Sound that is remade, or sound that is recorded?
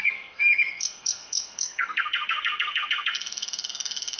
remade